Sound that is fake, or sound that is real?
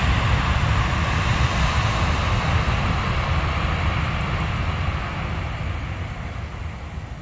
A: real